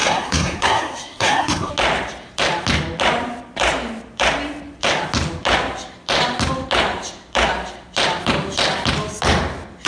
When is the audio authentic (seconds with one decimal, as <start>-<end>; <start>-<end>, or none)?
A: 1.7-9.9